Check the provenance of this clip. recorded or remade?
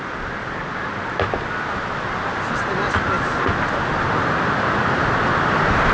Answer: recorded